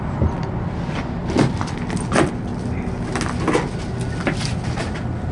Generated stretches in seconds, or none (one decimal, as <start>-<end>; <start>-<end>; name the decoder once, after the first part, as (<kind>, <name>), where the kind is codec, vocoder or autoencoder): none